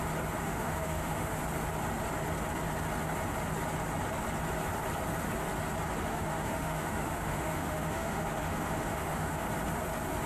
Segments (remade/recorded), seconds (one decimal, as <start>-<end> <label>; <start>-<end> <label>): 0.0-0.4 recorded; 0.4-1.4 remade; 1.4-6.1 recorded; 6.1-9.5 remade; 9.5-10.3 recorded